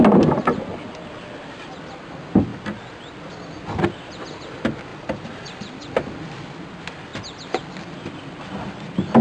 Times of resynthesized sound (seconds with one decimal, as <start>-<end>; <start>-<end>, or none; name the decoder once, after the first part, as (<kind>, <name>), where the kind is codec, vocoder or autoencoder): 4.9-5.9 (vocoder, BigVGAN v2)